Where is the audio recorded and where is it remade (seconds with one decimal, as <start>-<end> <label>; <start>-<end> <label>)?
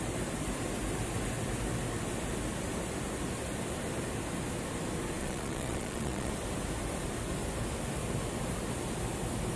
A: 0.0-5.2 recorded; 5.2-6.3 remade; 6.3-9.6 recorded